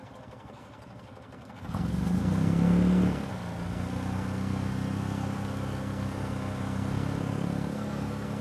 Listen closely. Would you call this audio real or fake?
fake